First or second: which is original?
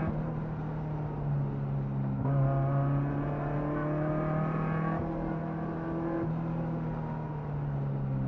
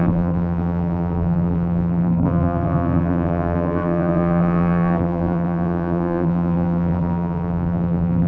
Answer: first